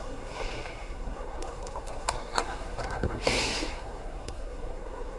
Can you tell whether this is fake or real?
fake